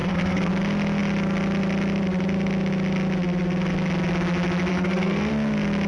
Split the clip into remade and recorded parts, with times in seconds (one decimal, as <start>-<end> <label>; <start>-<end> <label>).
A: 0.0-0.5 remade; 0.5-4.7 recorded; 4.7-5.3 remade; 5.3-5.9 recorded